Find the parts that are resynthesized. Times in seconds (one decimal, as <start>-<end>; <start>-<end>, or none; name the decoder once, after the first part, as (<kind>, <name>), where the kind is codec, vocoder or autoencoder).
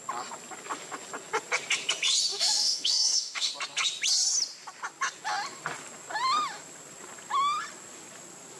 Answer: 2.3-3.5 (autoencoder, DAC-VAE)